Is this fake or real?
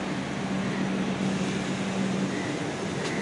real